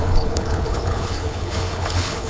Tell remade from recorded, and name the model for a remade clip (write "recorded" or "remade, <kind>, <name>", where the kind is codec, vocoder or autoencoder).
remade, codec, HILCodec